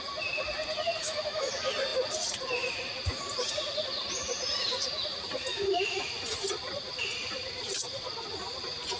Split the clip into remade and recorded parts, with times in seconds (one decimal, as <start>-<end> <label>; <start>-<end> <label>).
0.0-1.0 recorded; 1.0-1.5 remade; 1.5-5.5 recorded; 5.5-6.1 remade; 6.1-9.0 recorded